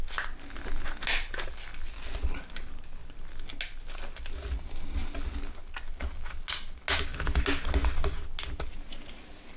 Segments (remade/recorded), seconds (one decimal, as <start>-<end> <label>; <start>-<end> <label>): 0.0-9.6 recorded